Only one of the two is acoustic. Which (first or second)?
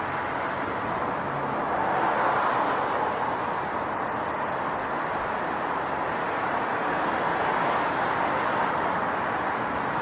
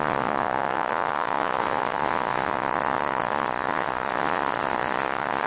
first